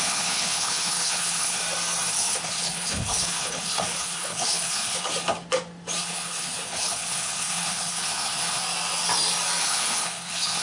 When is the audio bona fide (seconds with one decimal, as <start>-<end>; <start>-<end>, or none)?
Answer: 1.6-2.1; 5.1-6.0; 8.6-9.6